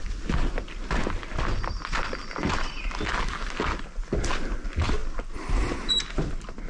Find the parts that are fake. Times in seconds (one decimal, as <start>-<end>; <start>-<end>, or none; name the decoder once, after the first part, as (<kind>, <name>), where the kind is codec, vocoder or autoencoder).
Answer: 5.0-5.9 (vocoder, BigVGAN v2)